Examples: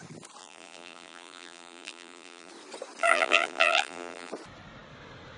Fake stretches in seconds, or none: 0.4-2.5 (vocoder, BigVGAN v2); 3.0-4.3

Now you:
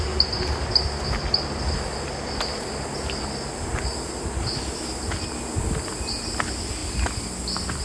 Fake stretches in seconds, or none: none

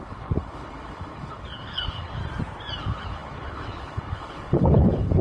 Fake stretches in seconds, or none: 0.0-2.2 (codec, HILCodec); 2.8-5.2

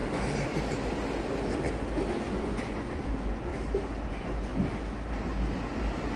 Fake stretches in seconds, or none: 2.3-3.5 (vocoder, Vocos); 4.1-4.5

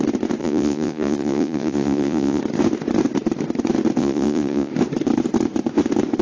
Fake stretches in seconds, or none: 0.4-2.4 (vocoder, Vocos); 4.0-4.7